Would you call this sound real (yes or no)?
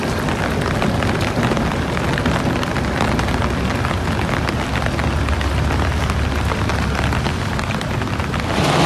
yes